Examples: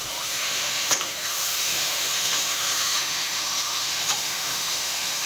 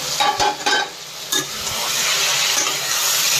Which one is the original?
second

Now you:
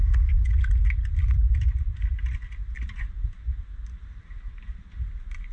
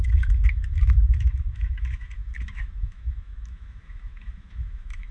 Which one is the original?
first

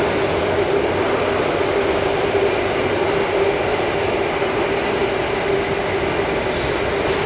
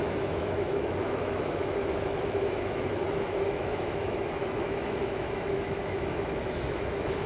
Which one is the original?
first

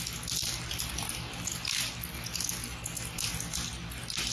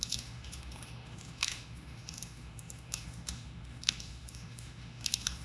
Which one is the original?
first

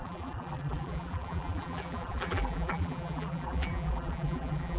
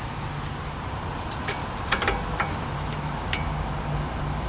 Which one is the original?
second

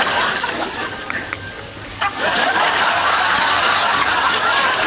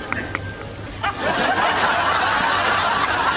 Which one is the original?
second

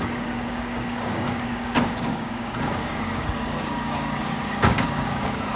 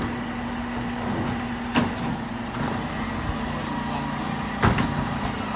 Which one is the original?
second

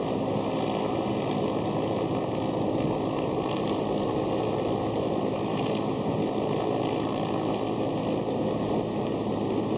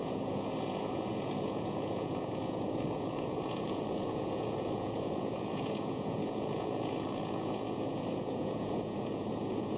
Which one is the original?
first